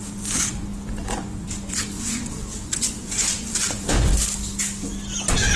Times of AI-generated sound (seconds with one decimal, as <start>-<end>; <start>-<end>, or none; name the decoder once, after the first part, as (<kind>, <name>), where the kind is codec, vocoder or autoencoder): 0.0-4.1 (vocoder, Vocos)